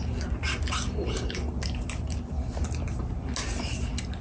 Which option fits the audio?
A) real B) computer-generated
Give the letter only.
A